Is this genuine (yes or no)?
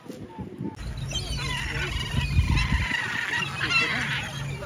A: yes